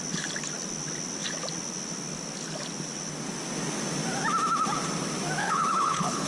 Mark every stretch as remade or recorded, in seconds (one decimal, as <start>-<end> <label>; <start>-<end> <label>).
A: 0.0-5.4 recorded; 5.4-6.3 remade